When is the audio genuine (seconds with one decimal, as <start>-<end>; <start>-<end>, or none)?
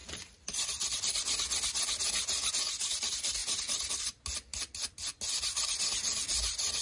2.5-3.4; 3.9-6.8